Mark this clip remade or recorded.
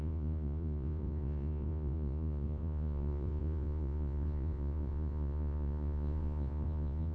remade